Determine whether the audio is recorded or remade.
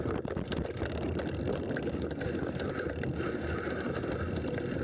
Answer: recorded